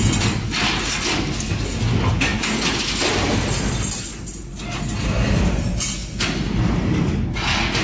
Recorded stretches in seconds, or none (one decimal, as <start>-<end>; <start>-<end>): 0.0-7.8